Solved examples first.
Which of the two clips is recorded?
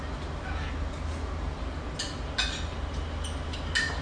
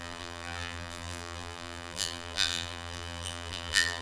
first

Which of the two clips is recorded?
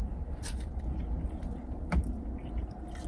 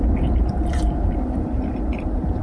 first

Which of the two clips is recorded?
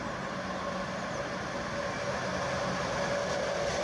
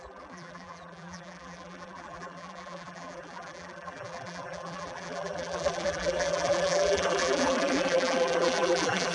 first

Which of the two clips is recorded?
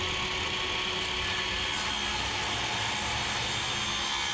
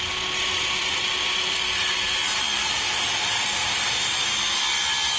first